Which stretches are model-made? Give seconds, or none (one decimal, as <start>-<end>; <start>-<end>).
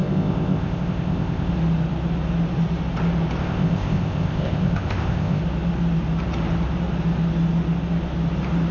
0.0-1.5; 3.4-5.4